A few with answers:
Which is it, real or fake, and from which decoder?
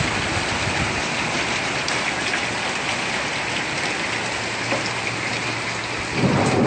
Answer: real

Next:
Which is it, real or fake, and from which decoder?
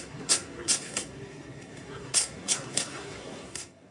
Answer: fake, codec, SNAC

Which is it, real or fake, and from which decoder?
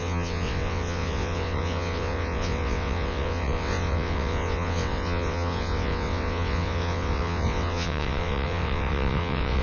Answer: fake, vocoder, WaveNeXt